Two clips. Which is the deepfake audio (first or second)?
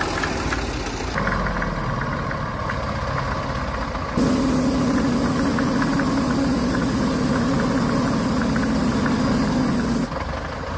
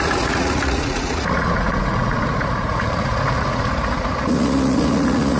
second